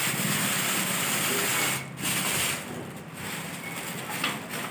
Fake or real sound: real